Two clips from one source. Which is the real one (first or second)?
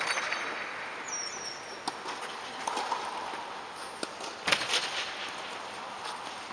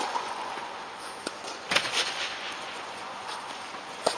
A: first